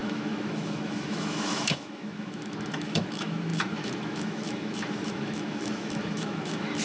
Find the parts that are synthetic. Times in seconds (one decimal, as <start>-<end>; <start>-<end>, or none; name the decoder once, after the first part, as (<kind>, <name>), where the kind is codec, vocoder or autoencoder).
0.0-6.8 (autoencoder, DAC-VAE)